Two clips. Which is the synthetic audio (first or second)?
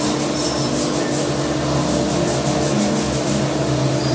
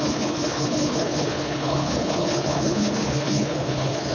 second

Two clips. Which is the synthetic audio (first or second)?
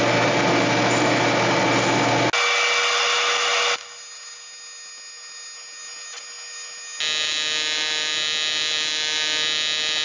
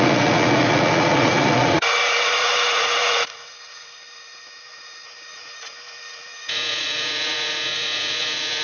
second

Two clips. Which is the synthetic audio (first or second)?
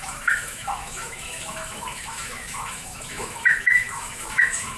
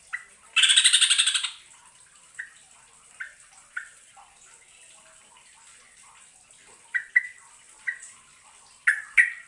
first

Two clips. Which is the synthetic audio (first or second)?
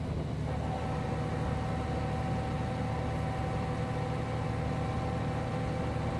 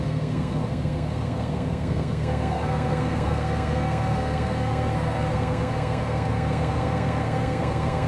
second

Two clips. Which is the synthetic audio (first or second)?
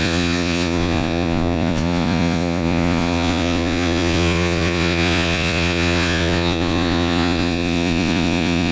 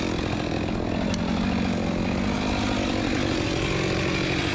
first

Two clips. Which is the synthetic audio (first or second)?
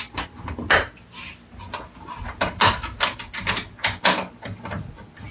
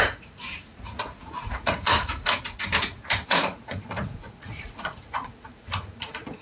second